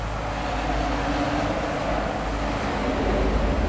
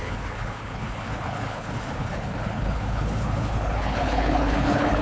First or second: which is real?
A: first